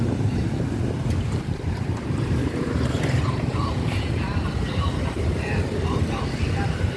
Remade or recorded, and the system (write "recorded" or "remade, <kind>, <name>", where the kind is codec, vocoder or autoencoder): remade, vocoder, BigVGAN v2